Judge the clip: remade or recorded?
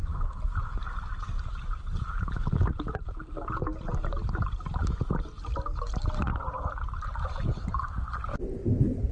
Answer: recorded